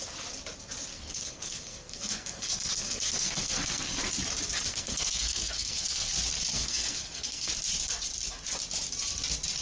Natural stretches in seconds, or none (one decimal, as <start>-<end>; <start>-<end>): 0.0-0.9; 4.0-4.7; 6.1-6.5; 7.5-9.6